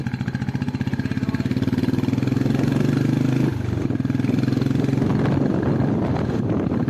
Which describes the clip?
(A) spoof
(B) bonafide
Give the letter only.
B